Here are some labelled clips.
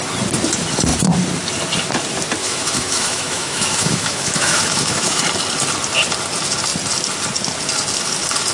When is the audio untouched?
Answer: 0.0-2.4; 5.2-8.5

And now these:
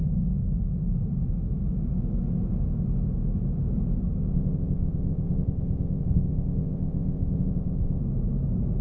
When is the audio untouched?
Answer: 0.0-4.3; 8.0-8.8

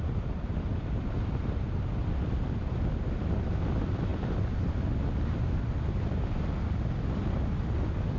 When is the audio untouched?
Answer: 0.0-8.2

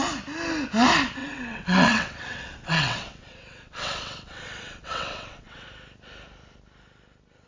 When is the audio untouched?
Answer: 0.0-1.2; 5.7-7.5

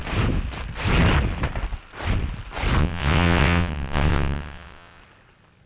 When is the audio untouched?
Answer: 0.0-2.8; 5.0-5.7

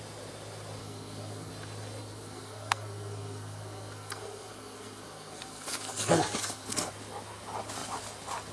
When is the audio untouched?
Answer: 0.0-0.8; 1.5-2.0; 6.9-8.5